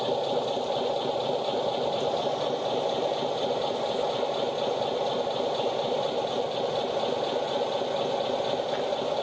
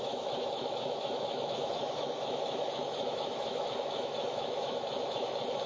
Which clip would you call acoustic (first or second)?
first